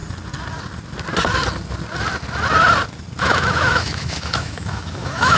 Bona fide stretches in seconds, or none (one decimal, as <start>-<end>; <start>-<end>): 0.0-3.2